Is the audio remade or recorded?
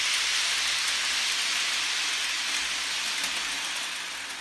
recorded